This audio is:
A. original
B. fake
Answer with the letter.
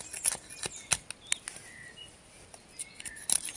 A